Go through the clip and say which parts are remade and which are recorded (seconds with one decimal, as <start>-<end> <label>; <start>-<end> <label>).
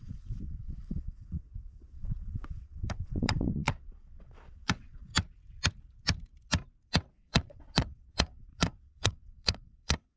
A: 0.0-5.1 remade; 5.1-7.1 recorded; 7.1-10.2 remade